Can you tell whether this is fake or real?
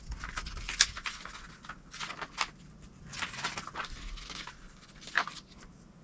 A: real